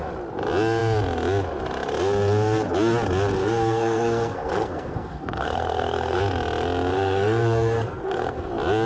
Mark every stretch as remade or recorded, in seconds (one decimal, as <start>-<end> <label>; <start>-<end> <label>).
0.0-3.3 recorded; 3.3-6.2 remade; 6.2-6.9 recorded; 6.9-8.5 remade; 8.5-8.9 recorded